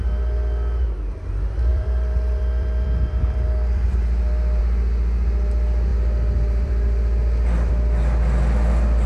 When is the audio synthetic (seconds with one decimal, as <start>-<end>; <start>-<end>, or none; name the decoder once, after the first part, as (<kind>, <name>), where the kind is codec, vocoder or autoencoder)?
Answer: 1.7-4.6 (vocoder, BigVGAN v2); 5.9-7.7